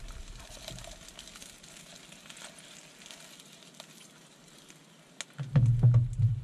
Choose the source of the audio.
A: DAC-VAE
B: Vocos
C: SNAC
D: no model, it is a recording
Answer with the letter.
D